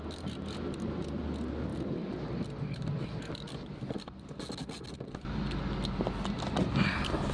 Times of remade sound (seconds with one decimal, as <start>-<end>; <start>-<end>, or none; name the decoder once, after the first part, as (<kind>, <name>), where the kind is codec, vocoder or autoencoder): 1.7-3.2 (vocoder, BigVGAN v2)